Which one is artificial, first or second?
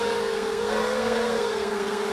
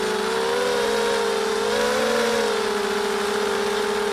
first